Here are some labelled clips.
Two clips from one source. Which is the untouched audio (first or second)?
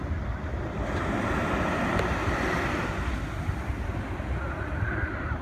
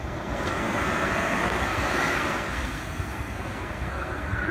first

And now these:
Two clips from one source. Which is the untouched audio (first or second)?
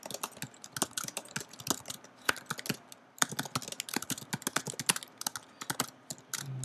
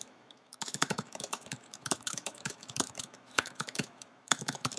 first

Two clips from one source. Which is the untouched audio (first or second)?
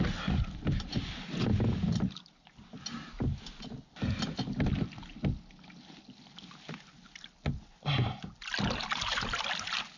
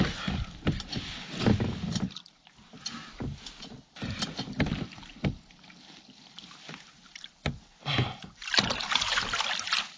first